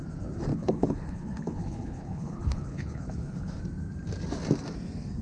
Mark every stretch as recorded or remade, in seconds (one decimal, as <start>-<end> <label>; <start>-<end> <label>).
0.0-0.5 recorded; 0.5-3.6 remade; 3.6-5.2 recorded